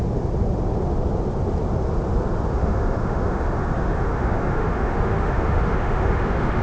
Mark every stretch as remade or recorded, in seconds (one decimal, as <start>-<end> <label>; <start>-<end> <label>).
0.0-2.5 recorded; 2.5-6.6 remade